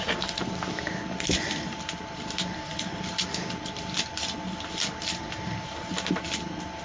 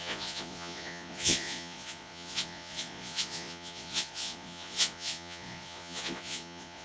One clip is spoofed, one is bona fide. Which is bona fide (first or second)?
first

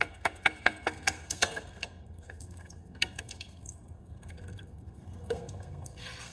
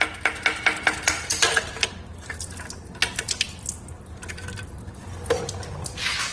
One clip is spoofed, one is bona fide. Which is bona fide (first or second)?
second